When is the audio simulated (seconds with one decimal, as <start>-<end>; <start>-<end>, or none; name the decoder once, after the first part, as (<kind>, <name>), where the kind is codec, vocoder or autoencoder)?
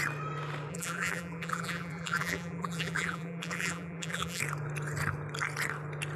0.7-4.4 (vocoder, BigVGAN v2)